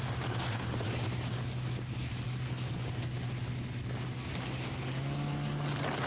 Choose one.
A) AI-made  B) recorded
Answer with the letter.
B